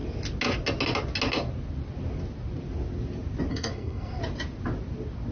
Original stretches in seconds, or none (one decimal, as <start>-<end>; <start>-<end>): 0.0-3.5; 4.2-5.3